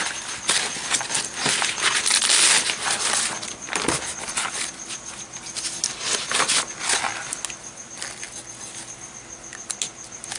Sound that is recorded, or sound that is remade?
recorded